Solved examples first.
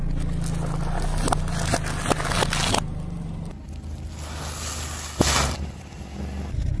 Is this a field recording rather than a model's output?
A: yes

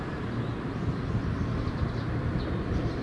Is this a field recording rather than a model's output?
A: yes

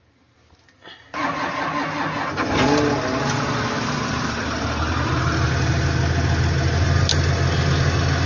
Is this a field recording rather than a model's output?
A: yes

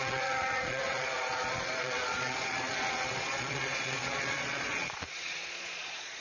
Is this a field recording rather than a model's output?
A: no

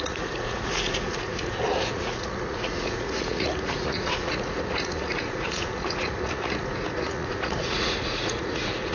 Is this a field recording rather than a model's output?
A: no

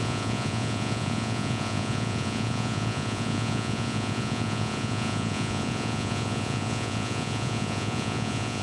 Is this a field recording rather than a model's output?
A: no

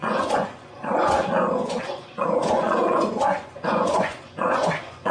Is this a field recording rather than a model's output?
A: no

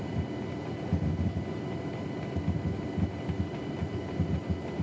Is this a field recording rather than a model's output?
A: yes